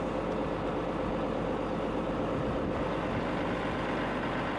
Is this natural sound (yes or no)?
yes